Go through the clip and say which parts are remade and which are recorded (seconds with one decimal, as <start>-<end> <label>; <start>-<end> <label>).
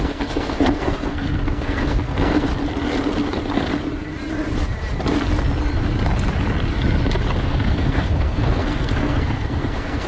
0.0-2.5 remade; 2.5-7.4 recorded; 7.4-10.1 remade